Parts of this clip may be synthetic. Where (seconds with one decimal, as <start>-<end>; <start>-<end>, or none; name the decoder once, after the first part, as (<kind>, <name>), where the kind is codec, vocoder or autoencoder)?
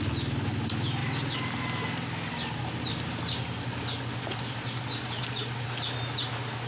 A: none